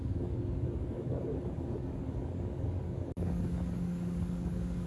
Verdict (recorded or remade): remade